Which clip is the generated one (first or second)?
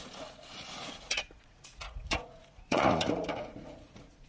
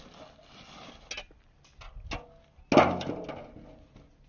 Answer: first